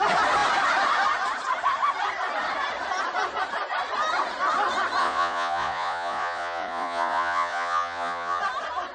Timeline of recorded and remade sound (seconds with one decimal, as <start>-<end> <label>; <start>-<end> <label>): 0.0-5.0 recorded; 5.0-8.4 remade; 8.4-8.9 recorded

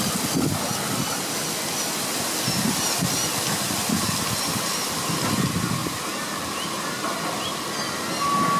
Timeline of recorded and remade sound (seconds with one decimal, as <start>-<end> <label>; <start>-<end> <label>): 0.0-8.6 recorded

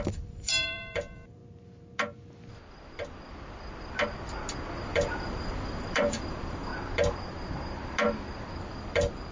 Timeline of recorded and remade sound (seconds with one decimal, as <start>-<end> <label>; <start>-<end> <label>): 0.0-1.4 remade; 1.4-4.8 recorded; 4.8-6.7 remade; 6.7-8.6 recorded; 8.6-9.3 remade

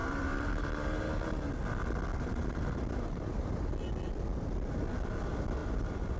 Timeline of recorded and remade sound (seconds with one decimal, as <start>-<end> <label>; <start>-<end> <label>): 0.0-1.5 remade; 1.5-2.1 recorded; 2.1-3.7 remade; 3.7-5.6 recorded; 5.6-6.2 remade

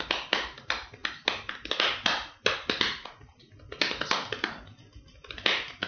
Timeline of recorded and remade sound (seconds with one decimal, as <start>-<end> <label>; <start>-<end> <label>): 0.0-5.9 recorded

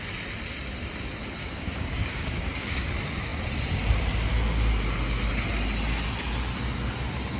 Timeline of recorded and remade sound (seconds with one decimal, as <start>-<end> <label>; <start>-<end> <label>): 0.0-1.4 recorded; 1.4-2.9 remade; 2.9-7.4 recorded

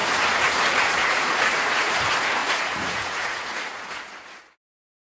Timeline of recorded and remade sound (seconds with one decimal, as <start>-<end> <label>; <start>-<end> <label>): 0.0-2.0 remade; 2.0-2.4 recorded; 2.4-3.8 remade; 3.8-5.0 recorded